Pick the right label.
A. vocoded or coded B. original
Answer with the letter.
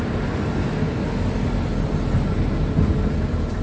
B